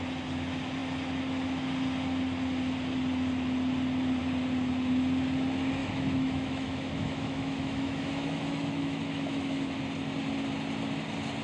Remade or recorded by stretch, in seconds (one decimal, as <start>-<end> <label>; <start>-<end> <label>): 0.0-5.8 recorded; 5.8-9.8 remade; 9.8-11.4 recorded